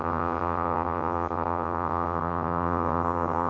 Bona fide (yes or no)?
no